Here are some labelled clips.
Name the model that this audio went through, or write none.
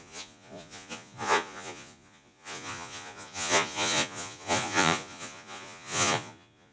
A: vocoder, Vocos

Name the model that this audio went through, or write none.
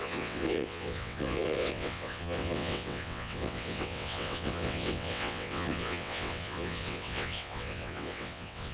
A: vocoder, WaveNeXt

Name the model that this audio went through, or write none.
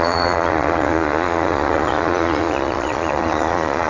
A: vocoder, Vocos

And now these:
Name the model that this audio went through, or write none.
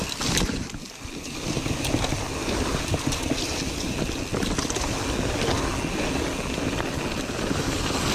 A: none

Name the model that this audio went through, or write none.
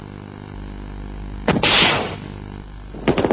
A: none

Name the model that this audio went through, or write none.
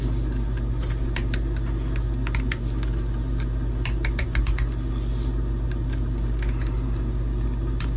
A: none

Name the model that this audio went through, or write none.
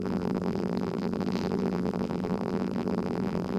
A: vocoder, BigVGAN v2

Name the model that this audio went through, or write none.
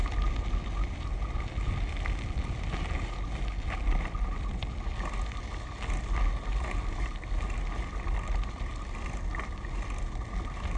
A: none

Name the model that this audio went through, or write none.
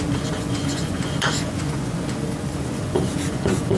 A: vocoder, Vocos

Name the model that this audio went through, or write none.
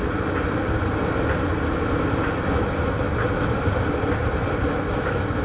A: none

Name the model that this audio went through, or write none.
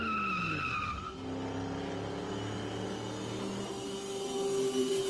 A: none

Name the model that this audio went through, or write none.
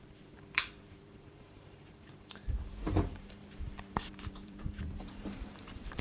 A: vocoder, BigVGAN v2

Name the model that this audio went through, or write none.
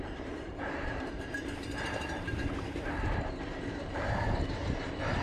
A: vocoder, BigVGAN v2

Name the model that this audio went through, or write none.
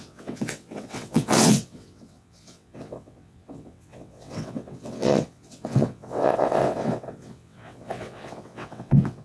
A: vocoder, WaveNeXt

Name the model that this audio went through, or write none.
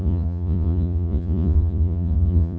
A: vocoder, Vocos